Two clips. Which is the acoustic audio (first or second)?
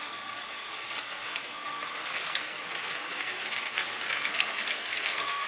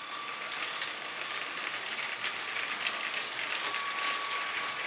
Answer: second